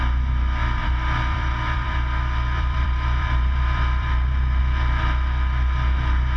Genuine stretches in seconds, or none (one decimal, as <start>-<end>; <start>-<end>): 0.0-0.8; 4.6-6.4